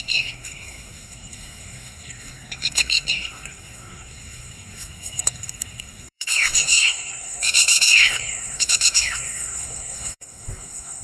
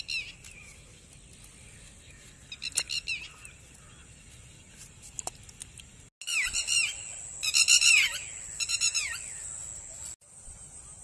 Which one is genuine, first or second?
second